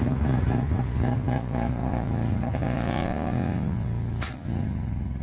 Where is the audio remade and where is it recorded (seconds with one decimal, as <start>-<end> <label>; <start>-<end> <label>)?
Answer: 0.0-5.2 remade